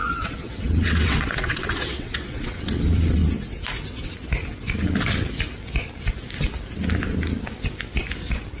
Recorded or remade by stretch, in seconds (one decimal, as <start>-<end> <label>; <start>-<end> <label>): 0.0-3.2 remade; 3.2-8.6 recorded